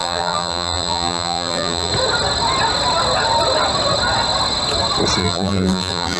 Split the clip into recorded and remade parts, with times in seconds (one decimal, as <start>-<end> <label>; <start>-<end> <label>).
0.0-1.9 remade; 1.9-5.2 recorded; 5.2-6.2 remade